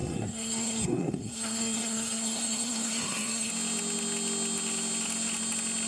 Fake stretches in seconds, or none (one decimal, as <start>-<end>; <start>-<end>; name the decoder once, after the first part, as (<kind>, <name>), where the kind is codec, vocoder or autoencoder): 0.0-3.5 (codec, SNAC)